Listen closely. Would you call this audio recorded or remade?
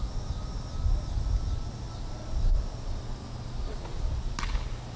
recorded